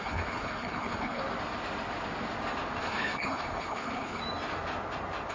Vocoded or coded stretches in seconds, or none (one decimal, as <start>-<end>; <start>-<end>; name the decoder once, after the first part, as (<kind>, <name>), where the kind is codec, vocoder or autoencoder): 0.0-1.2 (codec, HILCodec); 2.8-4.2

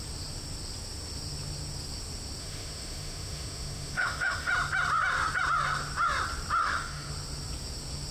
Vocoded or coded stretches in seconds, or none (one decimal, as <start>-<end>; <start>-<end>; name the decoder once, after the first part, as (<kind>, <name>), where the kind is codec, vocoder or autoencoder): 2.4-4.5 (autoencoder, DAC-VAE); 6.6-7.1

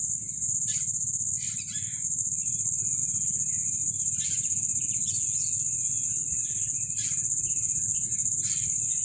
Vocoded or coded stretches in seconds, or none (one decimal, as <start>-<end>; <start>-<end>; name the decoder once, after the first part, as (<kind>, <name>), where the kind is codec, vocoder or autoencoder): none

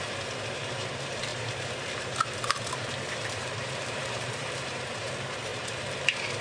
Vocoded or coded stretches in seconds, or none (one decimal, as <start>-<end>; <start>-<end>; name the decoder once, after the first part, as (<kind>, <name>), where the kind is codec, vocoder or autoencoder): 1.3-5.1 (vocoder, BigVGAN v2)

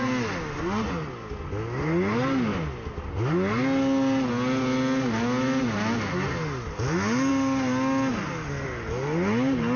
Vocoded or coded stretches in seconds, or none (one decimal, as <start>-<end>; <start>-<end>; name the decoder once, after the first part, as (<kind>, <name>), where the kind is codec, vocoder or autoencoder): none